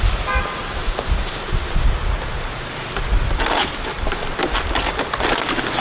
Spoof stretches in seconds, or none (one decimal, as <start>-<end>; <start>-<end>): 0.8-4.3